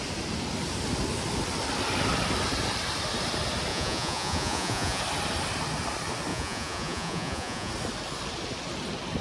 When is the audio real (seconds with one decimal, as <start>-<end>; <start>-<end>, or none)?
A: 0.0-3.7; 5.0-6.3; 7.7-9.2